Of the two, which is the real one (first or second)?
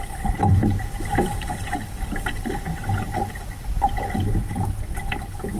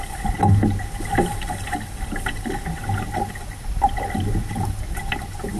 second